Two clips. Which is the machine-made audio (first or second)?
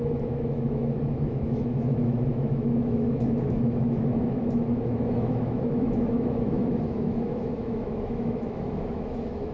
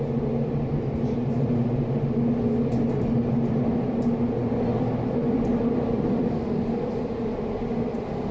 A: first